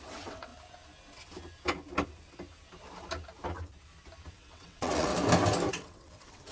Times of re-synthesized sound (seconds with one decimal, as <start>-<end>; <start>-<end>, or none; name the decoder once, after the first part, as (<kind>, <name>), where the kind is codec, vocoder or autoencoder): 0.0-0.5 (vocoder, WaveNeXt); 4.3-5.1; 5.7-6.5